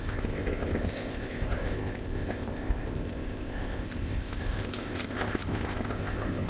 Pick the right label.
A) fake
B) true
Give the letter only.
A